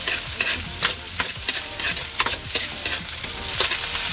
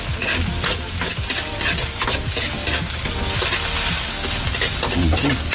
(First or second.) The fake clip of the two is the first